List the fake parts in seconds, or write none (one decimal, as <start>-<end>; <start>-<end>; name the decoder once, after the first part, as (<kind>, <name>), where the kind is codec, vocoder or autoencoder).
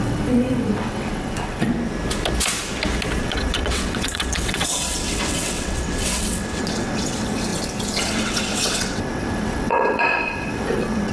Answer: 0.0-1.7 (vocoder, WaveNeXt); 3.2-7.5; 8.0-11.1